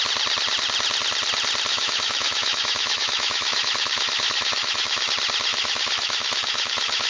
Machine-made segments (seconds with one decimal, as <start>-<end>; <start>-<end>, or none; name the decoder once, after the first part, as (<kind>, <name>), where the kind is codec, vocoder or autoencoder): 1.7-5.1 (autoencoder, DAC-VAE); 5.5-7.1